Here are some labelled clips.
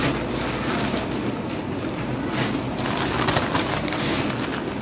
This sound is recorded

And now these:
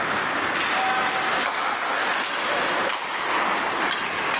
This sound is recorded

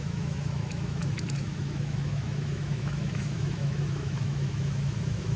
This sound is remade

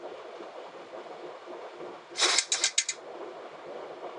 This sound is recorded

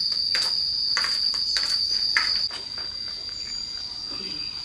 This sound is recorded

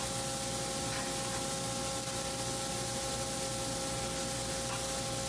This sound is recorded